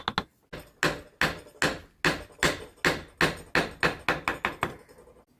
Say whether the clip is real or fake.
real